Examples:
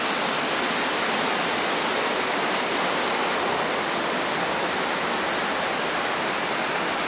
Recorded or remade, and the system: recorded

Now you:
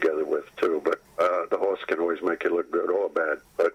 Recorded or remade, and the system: recorded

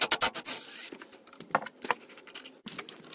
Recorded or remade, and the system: recorded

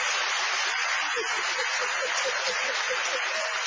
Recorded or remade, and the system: recorded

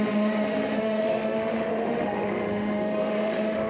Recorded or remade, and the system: remade, autoencoder, DAC-VAE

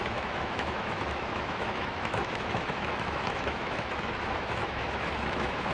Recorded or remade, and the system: remade, autoencoder, DAC-VAE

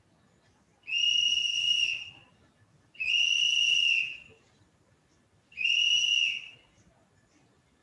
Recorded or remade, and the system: recorded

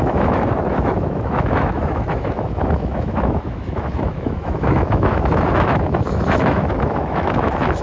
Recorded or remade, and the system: remade, autoencoder, DAC-VAE